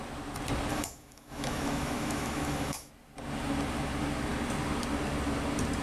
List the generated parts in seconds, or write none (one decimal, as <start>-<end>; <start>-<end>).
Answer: 0.7-2.9